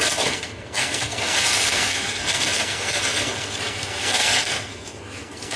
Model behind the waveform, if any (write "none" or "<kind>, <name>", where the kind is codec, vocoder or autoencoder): codec, SNAC